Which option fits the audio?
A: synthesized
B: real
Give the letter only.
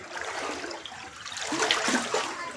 B